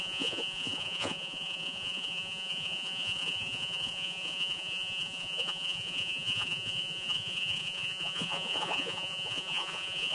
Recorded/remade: remade